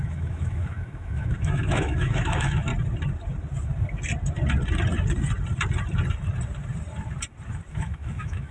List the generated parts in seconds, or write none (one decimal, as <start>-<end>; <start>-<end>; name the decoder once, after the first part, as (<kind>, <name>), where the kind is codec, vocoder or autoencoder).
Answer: 0.0-2.7 (autoencoder, DAC-VAE); 7.7-8.5